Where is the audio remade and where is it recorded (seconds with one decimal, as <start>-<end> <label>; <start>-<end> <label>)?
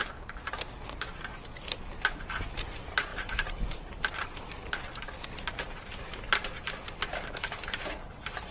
0.0-3.1 recorded; 3.1-4.4 remade; 4.4-8.5 recorded